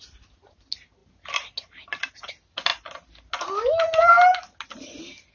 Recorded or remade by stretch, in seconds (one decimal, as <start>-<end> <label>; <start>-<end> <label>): 0.0-5.3 recorded